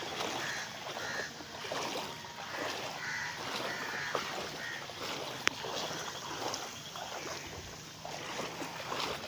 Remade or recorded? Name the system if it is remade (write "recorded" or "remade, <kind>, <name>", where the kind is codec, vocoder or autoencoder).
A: recorded